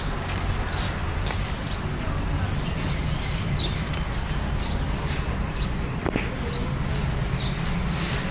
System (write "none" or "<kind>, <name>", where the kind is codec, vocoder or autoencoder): none